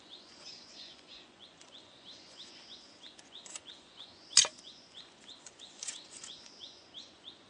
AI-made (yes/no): yes